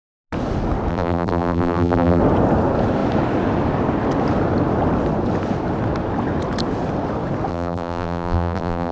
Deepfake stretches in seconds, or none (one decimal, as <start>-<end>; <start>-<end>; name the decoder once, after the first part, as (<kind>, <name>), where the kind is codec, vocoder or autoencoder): 0.9-2.2 (vocoder, BigVGAN v2); 7.5-8.9